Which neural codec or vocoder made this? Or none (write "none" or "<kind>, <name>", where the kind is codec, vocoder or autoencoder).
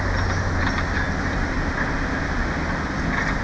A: none